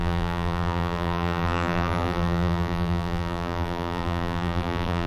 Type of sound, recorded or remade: remade